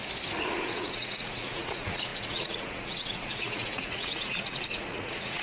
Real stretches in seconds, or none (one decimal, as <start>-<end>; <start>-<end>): 0.0-0.5